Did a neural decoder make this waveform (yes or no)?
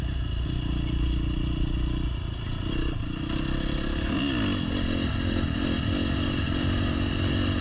no